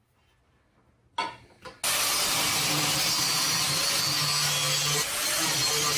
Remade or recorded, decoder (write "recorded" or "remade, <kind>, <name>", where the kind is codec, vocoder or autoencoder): recorded